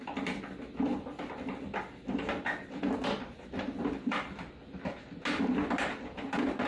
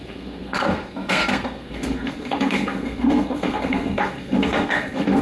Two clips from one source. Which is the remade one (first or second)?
second